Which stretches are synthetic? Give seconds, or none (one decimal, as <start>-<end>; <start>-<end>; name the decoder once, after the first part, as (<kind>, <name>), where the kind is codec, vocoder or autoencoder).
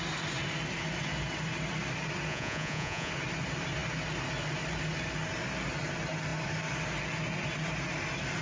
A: 2.3-3.1 (vocoder, Vocos)